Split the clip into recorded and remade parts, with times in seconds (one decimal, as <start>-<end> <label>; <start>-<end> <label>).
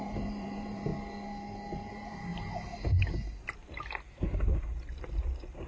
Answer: 0.0-0.9 remade; 0.9-1.9 recorded; 1.9-2.3 remade; 2.3-4.1 recorded; 4.1-5.7 remade